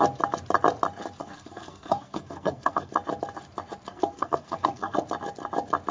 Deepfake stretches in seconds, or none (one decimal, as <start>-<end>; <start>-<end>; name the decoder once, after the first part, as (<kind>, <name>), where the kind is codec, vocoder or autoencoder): 1.2-2.9 (codec, SNAC); 3.9-5.0